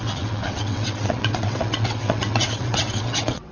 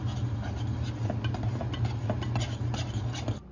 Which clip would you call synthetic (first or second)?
first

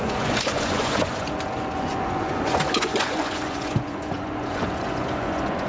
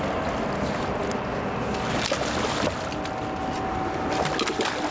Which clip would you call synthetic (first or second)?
first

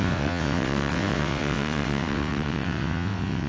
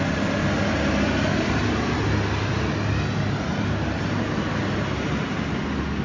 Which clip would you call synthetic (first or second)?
first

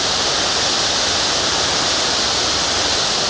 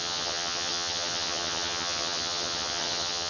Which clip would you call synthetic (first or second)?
second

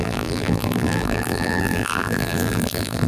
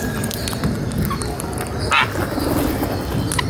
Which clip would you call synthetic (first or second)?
first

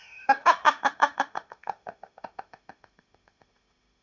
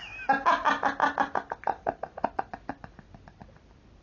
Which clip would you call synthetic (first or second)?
first